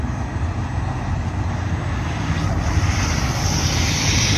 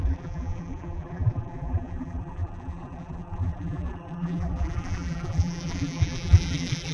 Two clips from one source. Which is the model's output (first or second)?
second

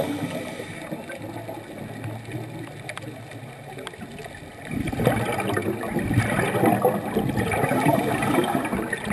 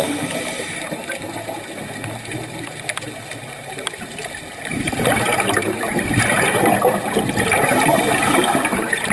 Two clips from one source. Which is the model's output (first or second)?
second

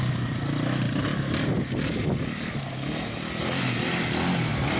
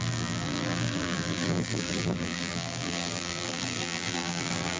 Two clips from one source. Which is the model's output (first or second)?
second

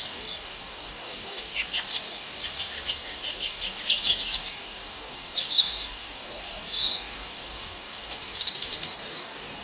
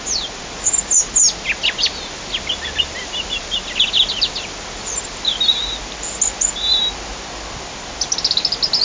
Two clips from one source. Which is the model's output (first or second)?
first